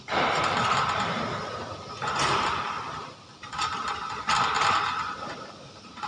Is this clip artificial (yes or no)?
yes